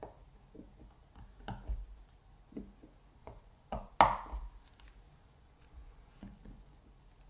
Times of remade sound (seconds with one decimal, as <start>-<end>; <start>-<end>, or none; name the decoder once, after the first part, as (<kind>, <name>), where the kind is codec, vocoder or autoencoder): 3.2-3.9 (vocoder, Vocos); 5.1-6.8